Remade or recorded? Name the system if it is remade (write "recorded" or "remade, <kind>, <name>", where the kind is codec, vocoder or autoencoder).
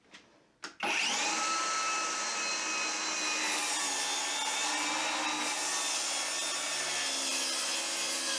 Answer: recorded